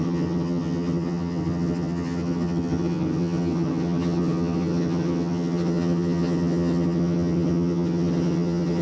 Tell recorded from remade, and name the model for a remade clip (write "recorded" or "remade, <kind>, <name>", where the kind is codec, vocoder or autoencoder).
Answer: remade, vocoder, HiFi-GAN